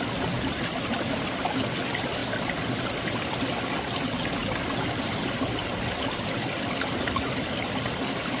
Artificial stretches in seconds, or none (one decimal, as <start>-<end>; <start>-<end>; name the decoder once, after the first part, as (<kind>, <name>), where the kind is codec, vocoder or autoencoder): none